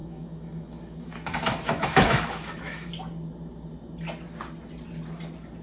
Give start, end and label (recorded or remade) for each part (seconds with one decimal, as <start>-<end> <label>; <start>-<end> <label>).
0.0-2.9 remade; 2.9-5.6 recorded